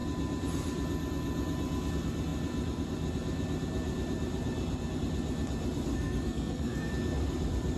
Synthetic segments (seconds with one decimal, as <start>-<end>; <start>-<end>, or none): 5.9-6.9